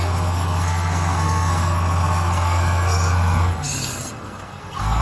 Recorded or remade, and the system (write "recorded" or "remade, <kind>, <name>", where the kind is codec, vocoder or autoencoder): remade, codec, SNAC